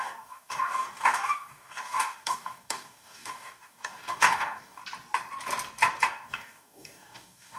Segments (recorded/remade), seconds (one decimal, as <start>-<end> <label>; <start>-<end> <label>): 0.0-4.8 remade; 4.8-6.1 recorded; 6.1-7.6 remade